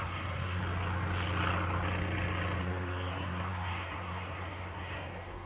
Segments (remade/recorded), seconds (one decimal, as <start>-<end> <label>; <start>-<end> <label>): 0.0-0.6 remade; 0.6-2.6 recorded; 2.6-5.5 remade